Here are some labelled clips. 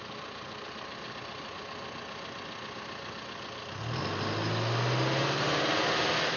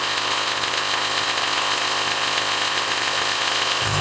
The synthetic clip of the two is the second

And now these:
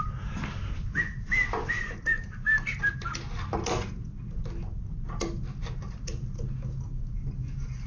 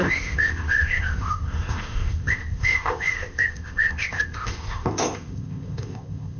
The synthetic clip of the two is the second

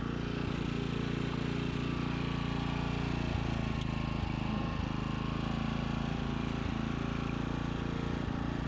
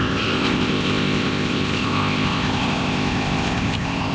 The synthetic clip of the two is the second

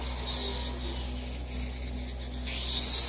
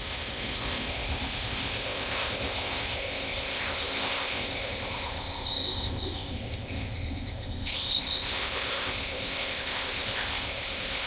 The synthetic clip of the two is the second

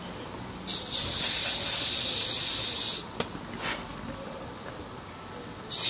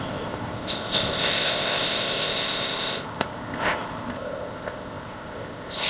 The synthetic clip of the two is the second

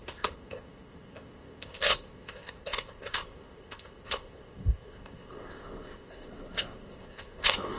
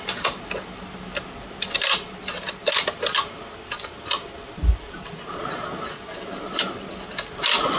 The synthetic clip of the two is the first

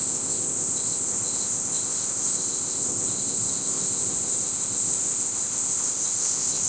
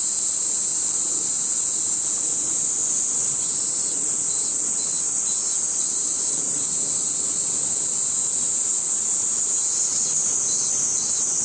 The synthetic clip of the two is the first